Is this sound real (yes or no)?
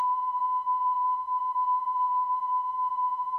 no